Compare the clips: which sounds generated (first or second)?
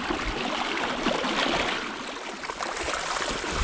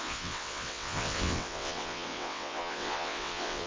second